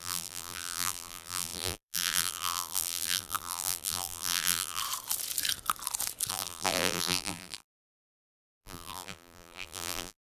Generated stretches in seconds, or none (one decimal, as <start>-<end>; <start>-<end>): 0.0-4.8; 6.3-10.3